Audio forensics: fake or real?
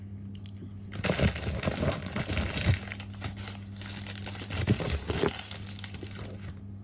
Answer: real